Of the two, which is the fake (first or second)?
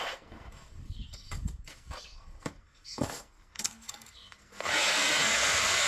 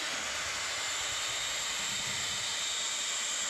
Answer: first